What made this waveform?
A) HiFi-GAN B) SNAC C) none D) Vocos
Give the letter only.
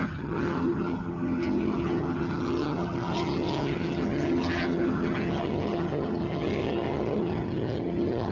A